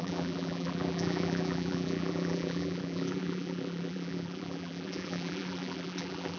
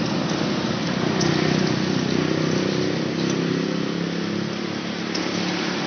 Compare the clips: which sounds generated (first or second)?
first